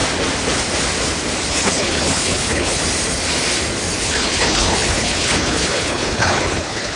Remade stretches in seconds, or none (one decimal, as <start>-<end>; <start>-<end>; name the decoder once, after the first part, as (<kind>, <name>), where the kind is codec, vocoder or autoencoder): 1.5-2.8 (codec, HILCodec); 4.0-7.0